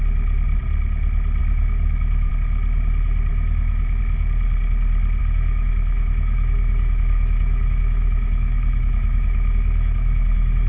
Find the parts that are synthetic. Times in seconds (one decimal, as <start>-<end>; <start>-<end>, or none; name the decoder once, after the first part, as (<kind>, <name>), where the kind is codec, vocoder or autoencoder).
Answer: 1.4-2.3 (autoencoder, DAC-VAE); 3.3-4.0; 5.2-10.7